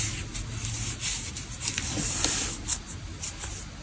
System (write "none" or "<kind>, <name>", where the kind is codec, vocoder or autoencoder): none